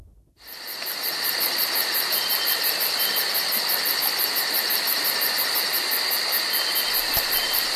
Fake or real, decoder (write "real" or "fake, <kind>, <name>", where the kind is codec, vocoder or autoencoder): real